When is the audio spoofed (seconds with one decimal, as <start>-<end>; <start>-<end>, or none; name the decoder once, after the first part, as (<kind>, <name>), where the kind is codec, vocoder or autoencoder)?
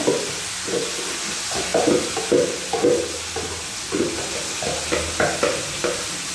none